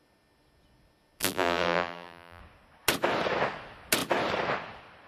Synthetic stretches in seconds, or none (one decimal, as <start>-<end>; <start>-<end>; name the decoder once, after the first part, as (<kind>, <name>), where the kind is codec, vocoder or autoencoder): 1.2-2.4 (vocoder, BigVGAN v2)